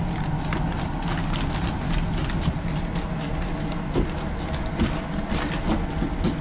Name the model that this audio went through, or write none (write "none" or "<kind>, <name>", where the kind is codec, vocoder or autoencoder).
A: none